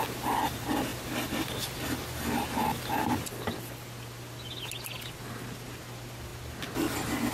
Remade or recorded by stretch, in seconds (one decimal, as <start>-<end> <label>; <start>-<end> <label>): 0.0-7.3 recorded